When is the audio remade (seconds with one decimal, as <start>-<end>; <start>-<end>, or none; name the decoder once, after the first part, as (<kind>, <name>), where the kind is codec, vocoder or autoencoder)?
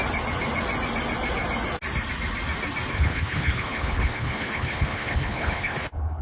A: 2.9-6.2 (codec, HILCodec)